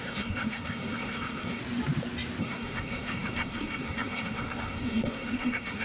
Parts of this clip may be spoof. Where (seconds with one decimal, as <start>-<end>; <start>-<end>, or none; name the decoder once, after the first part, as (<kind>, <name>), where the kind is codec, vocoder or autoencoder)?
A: 0.0-1.6 (codec, SNAC); 2.4-5.8

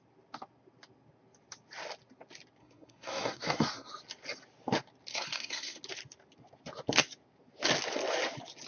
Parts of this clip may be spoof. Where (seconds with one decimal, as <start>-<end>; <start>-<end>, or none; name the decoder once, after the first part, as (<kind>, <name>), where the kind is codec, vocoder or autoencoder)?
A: 2.6-3.9 (codec, SNAC); 5.1-5.8